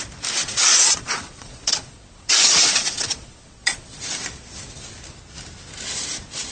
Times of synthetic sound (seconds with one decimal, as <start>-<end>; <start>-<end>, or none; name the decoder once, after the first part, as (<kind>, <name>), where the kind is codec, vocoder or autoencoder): 0.4-4.0 (vocoder, Vocos)